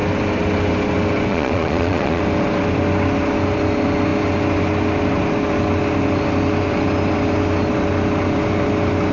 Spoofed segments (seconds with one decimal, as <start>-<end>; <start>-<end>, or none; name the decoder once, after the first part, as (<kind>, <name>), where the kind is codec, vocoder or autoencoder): 1.3-2.2 (vocoder, Vocos)